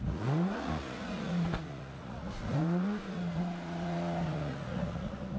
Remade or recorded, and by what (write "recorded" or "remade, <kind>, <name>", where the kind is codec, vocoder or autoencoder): remade, vocoder, Vocos